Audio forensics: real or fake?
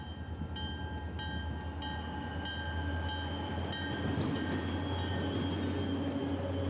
real